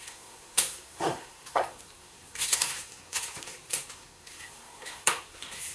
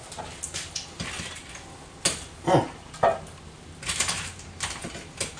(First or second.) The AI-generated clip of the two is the first